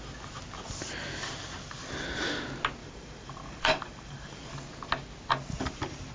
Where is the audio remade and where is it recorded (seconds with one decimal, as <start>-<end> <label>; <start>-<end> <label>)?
0.0-2.8 recorded; 2.8-4.4 remade; 4.4-6.1 recorded